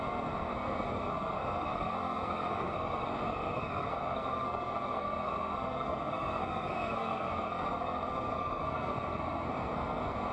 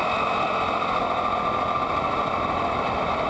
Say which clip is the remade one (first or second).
first